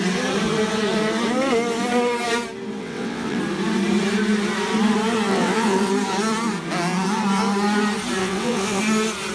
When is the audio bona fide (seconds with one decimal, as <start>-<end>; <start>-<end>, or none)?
0.0-2.8; 3.4-5.3; 5.9-8.2; 8.8-9.3